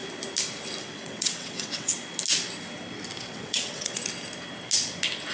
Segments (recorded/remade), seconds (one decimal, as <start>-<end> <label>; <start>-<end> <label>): 0.0-0.8 recorded; 0.8-1.9 remade; 1.9-3.2 recorded; 3.2-4.0 remade; 4.0-5.3 recorded

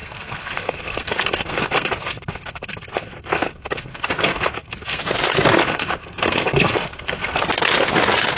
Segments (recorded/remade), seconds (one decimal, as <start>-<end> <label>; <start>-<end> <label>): 0.0-5.0 remade; 5.0-5.6 recorded; 5.6-7.4 remade; 7.4-8.4 recorded

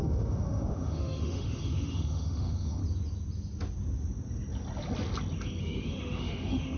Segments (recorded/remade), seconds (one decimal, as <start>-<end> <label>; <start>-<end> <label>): 0.0-2.8 remade; 2.8-5.6 recorded; 5.6-6.8 remade

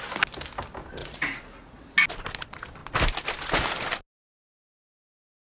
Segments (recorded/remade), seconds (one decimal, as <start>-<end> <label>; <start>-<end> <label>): 0.0-1.0 recorded; 1.0-1.8 remade; 1.8-5.5 recorded

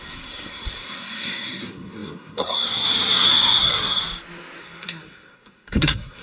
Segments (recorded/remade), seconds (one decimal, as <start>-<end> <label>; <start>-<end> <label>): 0.0-4.0 remade; 4.0-4.6 recorded; 4.6-6.2 remade

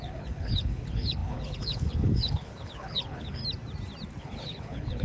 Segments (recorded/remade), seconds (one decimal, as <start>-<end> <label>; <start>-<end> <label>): 0.0-3.4 remade; 3.4-4.2 recorded; 4.2-5.0 remade

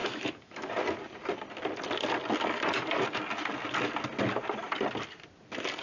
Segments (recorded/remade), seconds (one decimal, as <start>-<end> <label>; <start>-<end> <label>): 0.0-0.7 remade; 0.7-5.8 recorded

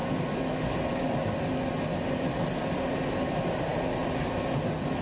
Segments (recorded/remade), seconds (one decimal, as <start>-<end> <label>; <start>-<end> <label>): 0.0-5.0 recorded